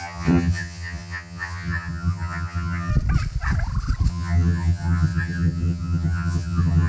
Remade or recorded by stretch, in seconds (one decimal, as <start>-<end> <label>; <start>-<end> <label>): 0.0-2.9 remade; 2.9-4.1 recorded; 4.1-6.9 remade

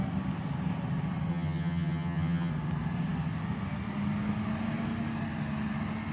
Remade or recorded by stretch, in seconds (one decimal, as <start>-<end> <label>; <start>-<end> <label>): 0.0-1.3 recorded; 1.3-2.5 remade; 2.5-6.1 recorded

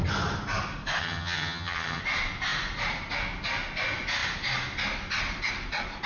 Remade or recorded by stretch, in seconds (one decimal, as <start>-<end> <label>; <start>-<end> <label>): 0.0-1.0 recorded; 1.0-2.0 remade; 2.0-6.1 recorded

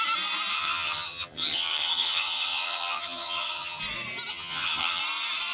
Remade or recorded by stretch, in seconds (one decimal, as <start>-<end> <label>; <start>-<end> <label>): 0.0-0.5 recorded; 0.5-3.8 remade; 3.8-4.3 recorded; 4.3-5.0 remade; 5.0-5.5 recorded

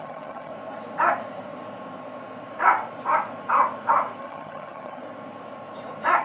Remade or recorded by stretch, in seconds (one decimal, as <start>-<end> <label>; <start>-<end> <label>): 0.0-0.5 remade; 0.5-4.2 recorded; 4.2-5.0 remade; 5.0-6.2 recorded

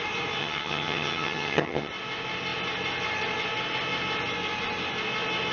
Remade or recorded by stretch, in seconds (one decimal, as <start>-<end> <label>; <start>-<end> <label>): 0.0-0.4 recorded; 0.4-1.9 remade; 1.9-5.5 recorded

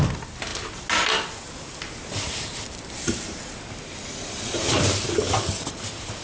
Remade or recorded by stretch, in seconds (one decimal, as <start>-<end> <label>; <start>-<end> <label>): 0.0-6.2 recorded

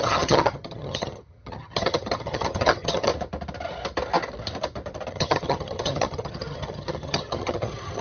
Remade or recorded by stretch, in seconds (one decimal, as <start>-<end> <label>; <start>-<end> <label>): 0.0-3.1 remade; 3.1-5.1 recorded; 5.1-8.0 remade